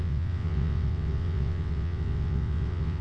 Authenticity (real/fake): fake